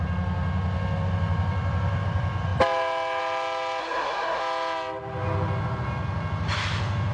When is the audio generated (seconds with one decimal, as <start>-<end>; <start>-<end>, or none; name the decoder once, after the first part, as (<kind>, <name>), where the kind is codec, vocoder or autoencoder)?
3.8-4.4 (codec, SNAC)